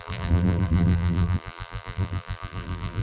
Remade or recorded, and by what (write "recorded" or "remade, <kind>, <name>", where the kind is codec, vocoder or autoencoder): remade, vocoder, BigVGAN v2